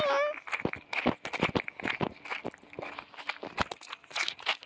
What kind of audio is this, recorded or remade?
recorded